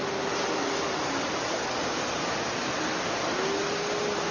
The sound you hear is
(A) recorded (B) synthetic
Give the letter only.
A